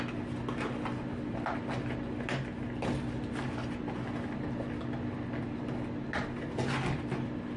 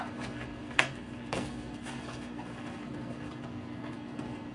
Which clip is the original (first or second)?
first